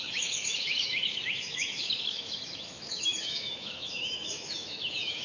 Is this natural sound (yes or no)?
no